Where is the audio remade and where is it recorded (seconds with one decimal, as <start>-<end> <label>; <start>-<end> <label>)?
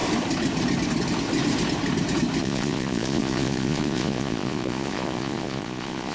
0.0-2.4 recorded; 2.4-6.1 remade